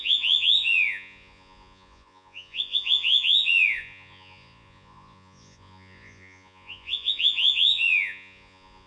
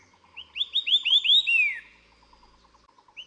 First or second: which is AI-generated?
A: first